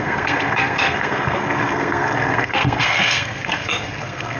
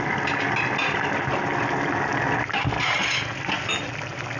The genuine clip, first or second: second